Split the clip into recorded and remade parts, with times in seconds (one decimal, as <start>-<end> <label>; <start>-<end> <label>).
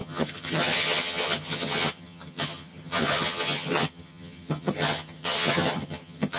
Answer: 0.0-6.4 remade